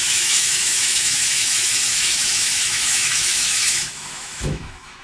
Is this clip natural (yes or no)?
no